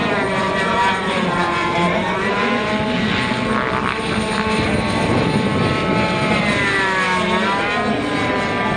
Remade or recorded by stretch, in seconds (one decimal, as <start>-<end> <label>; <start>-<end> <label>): 0.0-2.7 remade; 2.7-8.8 recorded

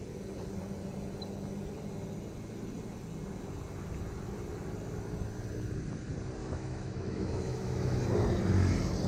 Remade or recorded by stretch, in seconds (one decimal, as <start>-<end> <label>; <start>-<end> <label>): 0.0-6.4 recorded; 6.4-8.0 remade; 8.0-9.1 recorded

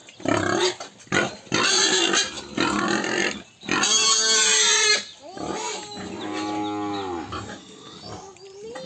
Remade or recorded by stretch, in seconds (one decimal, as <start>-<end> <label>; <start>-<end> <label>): 0.0-8.9 recorded

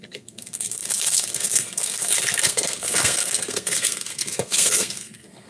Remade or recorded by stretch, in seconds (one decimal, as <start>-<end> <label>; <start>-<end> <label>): 0.0-5.5 remade

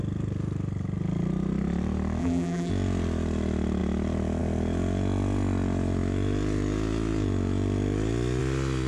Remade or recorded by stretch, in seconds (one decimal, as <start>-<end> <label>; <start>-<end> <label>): 0.0-2.2 recorded; 2.2-2.7 remade; 2.7-8.9 recorded

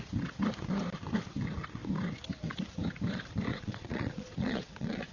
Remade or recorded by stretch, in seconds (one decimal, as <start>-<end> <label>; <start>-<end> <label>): 0.0-3.5 recorded; 3.5-5.1 remade

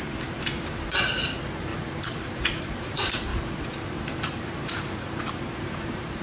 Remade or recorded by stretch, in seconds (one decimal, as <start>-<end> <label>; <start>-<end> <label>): 0.0-1.7 remade; 1.7-2.2 recorded; 2.2-6.2 remade